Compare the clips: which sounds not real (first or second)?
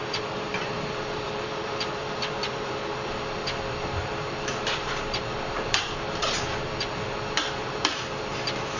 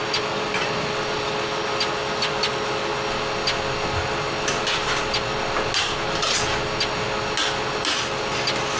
first